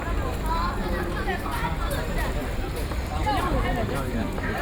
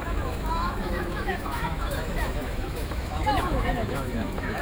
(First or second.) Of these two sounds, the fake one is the second